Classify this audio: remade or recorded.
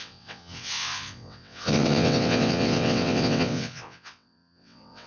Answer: remade